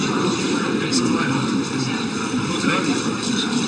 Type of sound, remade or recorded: remade